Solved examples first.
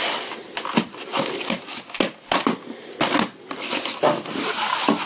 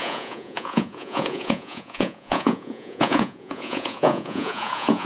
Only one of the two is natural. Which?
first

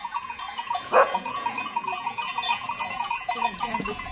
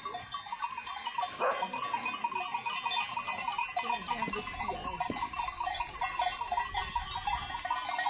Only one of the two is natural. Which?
second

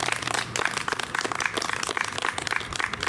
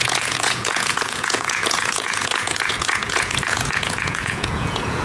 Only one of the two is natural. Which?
first